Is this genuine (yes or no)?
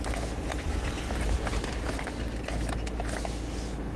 yes